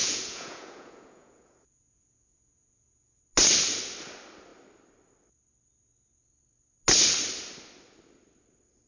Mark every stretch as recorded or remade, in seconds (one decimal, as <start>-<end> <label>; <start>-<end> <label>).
0.0-3.2 remade; 3.2-8.9 recorded